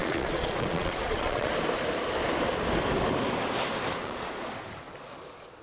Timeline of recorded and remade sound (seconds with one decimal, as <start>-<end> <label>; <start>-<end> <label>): 0.0-1.5 remade; 1.5-4.0 recorded; 4.0-4.5 remade; 4.5-5.6 recorded